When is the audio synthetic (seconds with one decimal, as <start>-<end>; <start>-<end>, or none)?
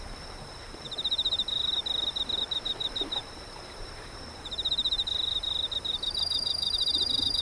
0.0-1.8; 2.4-7.4